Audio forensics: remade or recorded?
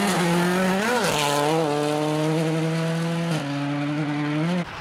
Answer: recorded